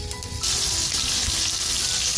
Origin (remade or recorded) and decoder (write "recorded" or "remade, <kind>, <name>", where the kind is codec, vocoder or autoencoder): recorded